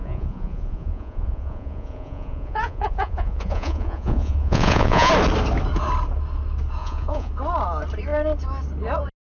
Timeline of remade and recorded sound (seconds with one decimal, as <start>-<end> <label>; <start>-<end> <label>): 0.0-5.1 remade; 5.1-6.8 recorded; 6.8-7.3 remade; 7.3-9.2 recorded